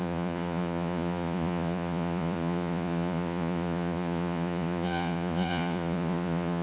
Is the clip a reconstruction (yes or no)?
yes